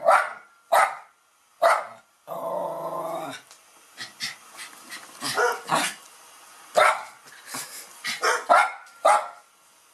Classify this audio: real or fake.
real